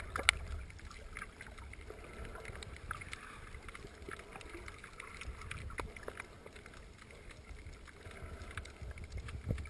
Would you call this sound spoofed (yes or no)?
no